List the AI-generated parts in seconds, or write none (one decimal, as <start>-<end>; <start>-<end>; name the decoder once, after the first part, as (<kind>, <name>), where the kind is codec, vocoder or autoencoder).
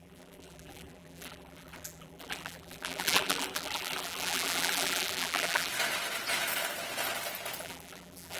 0.0-5.7 (vocoder, BigVGAN v2); 7.6-8.4